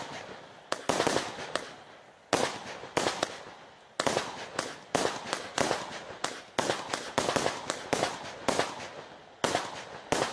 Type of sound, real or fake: real